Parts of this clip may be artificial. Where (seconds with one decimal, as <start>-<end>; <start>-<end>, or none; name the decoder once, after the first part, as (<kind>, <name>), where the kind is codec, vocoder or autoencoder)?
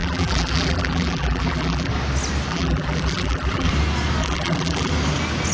0.0-1.9 (vocoder, BigVGAN v2); 2.5-3.7; 4.2-4.9